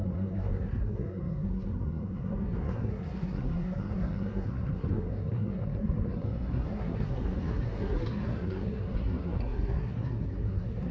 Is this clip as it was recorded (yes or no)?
no